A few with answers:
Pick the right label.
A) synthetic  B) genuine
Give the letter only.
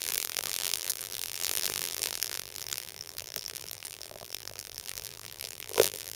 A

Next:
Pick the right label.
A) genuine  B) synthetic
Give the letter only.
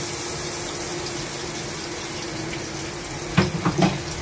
A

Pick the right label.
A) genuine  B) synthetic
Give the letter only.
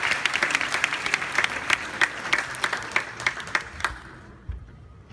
B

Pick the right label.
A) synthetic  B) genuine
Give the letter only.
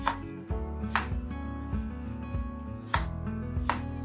B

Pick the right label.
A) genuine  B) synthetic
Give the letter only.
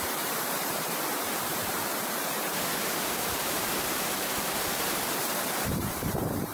B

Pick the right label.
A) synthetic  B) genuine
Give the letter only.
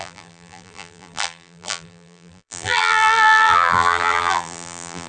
A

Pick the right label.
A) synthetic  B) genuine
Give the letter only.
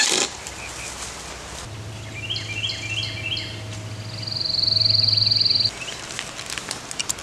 B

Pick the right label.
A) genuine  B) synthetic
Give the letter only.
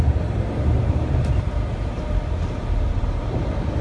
B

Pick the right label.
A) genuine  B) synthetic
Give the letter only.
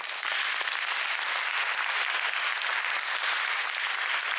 A